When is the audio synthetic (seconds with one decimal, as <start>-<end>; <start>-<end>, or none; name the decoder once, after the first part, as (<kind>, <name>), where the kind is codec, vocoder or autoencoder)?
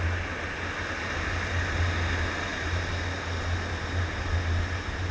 none